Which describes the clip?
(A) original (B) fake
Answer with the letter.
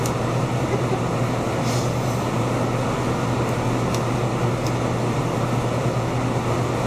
A